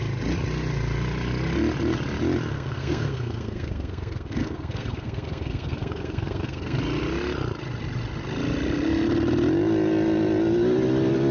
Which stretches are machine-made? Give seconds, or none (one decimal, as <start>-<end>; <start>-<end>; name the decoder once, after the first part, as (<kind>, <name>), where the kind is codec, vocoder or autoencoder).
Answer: 2.5-6.8 (codec, SNAC)